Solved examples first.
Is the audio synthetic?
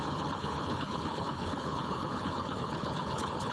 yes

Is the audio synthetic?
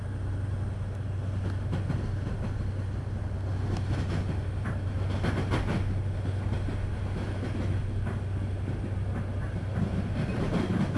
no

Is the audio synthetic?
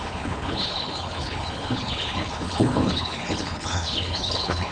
yes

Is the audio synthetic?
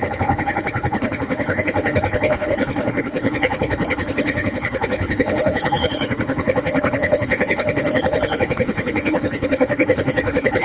yes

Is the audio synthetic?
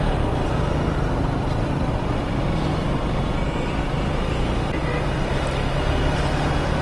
no